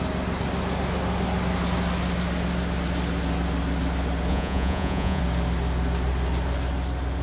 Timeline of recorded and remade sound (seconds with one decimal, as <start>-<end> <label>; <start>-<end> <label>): 0.0-4.3 recorded; 4.3-5.2 remade; 5.2-7.2 recorded